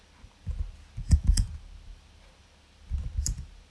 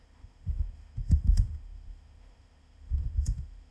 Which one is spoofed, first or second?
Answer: second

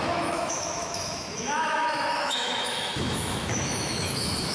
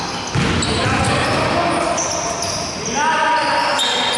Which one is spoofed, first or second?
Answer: first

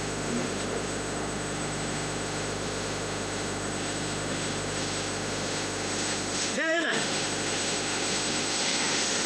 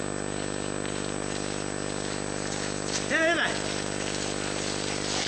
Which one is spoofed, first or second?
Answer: first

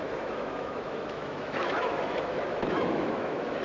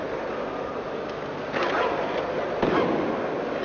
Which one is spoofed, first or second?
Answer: first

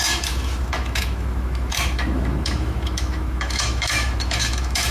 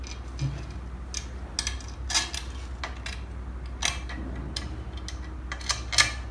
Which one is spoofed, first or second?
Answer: first